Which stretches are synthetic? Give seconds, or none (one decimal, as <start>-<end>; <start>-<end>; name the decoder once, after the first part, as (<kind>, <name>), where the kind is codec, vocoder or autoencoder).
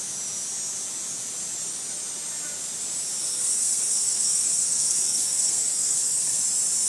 3.2-6.4 (codec, SNAC)